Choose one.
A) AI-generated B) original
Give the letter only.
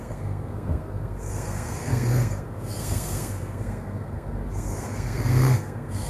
A